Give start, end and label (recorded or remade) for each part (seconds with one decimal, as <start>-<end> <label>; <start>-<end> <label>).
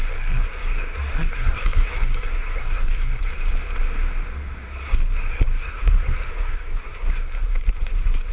0.0-3.3 remade; 3.3-4.7 recorded; 4.7-8.3 remade